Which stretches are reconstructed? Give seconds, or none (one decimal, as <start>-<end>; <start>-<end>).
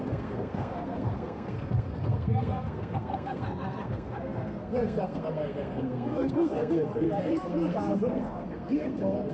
0.0-9.3